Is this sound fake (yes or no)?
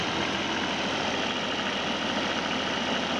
no